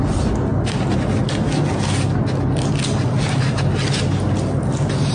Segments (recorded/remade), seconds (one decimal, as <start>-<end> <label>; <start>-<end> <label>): 0.0-5.1 recorded